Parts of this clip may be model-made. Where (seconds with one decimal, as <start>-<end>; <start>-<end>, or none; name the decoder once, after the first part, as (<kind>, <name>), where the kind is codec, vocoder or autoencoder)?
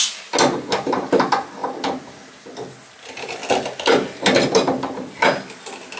none